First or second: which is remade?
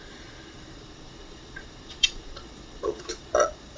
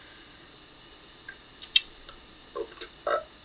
first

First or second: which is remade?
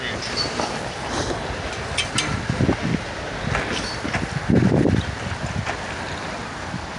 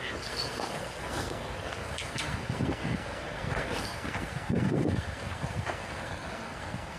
second